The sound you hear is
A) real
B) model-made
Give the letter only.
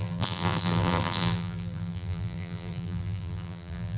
B